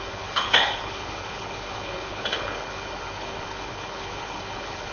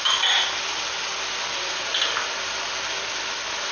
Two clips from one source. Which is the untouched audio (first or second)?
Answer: second